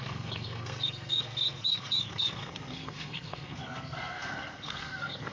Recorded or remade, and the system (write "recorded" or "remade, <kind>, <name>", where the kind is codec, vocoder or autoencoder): remade, codec, SNAC